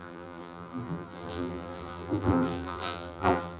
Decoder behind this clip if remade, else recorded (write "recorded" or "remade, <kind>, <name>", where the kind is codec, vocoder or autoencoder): remade, vocoder, BigVGAN v2